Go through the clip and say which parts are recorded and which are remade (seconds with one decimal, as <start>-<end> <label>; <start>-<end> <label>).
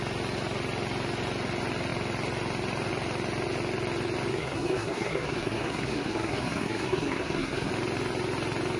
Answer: 0.0-4.3 recorded; 4.3-7.7 remade; 7.7-8.8 recorded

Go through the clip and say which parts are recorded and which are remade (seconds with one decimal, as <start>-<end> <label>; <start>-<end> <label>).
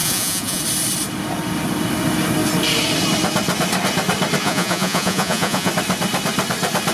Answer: 0.0-0.6 remade; 0.6-4.4 recorded; 4.4-5.7 remade; 5.7-6.9 recorded